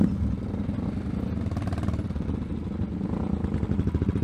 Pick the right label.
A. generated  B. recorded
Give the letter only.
B